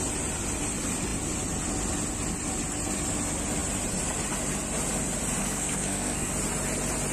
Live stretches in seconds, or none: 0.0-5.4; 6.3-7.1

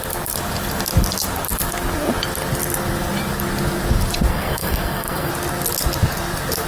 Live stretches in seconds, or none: 0.0-4.3; 5.3-6.7

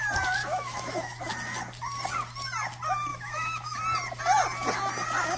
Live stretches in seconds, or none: 0.0-0.4; 1.3-3.1; 3.8-5.4

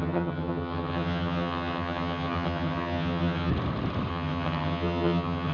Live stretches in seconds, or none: 3.5-4.1

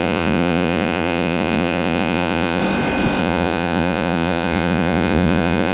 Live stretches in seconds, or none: 2.6-3.2

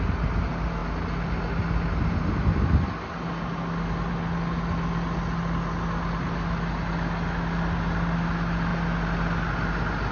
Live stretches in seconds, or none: 0.0-10.1